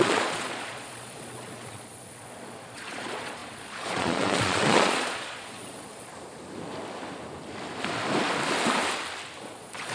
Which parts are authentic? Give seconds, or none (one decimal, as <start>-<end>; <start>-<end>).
6.1-9.4

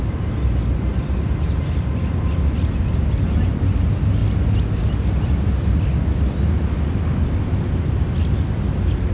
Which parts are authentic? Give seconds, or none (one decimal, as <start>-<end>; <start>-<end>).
0.0-9.1

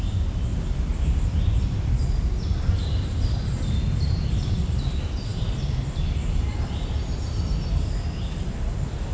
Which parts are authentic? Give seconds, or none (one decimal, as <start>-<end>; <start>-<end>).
0.0-9.1

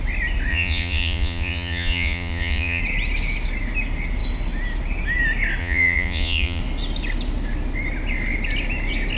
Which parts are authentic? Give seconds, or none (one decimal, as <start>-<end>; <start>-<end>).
0.0-0.5; 2.8-5.6; 6.6-9.2

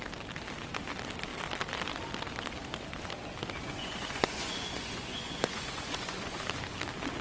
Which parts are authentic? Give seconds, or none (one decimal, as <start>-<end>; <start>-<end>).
0.0-3.6; 6.4-7.2

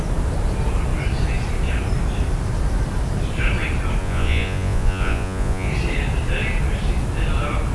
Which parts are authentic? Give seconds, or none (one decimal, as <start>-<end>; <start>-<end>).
0.0-4.0; 5.7-7.7

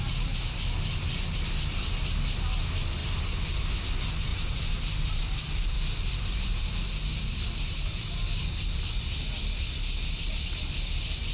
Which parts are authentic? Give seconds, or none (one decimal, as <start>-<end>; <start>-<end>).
0.0-11.3